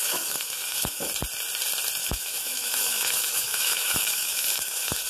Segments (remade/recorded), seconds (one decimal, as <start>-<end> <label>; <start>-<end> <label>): 0.0-1.1 remade; 1.1-2.0 recorded; 2.0-5.1 remade